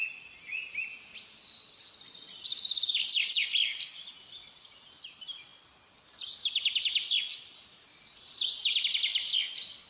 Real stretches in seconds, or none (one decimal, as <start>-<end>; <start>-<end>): 0.0-5.5; 6.3-9.9